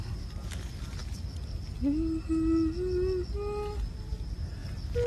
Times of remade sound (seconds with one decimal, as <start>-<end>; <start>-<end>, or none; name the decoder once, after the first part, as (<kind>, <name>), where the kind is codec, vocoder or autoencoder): none